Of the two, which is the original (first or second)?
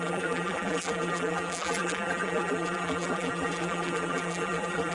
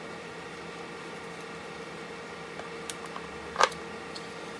second